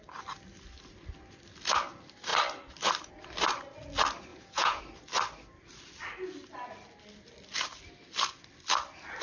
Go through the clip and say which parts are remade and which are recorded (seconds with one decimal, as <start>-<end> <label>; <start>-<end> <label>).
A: 0.0-4.3 recorded; 4.3-4.8 remade; 4.8-9.2 recorded